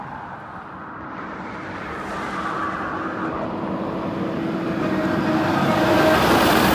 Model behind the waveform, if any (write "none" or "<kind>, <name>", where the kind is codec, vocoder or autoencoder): none